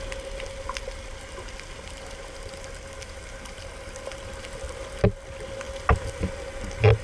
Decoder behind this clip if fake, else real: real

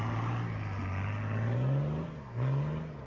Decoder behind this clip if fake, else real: real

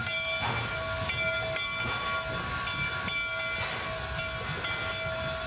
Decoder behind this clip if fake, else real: real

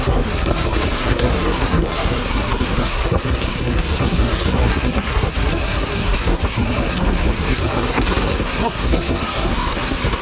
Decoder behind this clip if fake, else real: fake, codec, SNAC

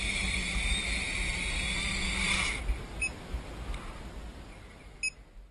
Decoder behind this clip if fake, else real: real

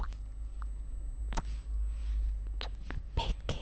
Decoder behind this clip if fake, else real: real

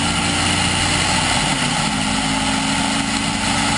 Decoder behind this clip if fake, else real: real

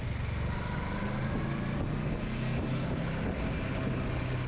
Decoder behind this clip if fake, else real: real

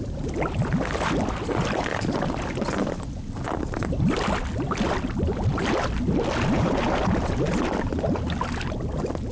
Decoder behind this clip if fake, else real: real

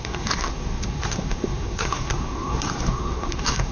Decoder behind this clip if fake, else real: fake, codec, SNAC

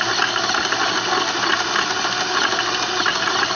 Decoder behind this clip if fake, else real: real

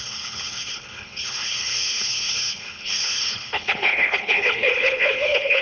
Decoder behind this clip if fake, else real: fake, codec, HILCodec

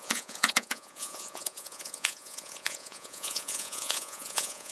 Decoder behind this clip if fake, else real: fake, vocoder, Vocos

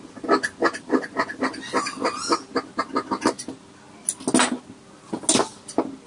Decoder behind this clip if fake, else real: real